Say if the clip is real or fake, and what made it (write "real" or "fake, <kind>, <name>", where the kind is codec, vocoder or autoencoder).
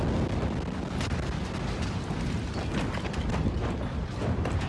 real